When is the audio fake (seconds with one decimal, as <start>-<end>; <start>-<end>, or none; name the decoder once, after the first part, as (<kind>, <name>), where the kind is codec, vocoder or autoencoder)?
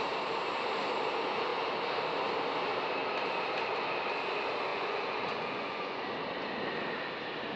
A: 4.7-6.0 (vocoder, Vocos)